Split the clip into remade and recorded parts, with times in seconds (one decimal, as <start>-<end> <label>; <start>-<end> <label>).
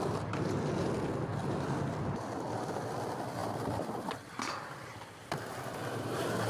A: 0.0-3.4 recorded; 3.4-6.5 remade